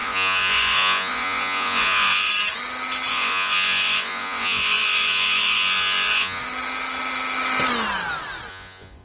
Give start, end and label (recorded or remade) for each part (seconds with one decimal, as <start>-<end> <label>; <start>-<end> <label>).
0.0-2.3 remade; 2.3-3.1 recorded; 3.1-6.4 remade; 6.4-8.5 recorded; 8.5-9.0 remade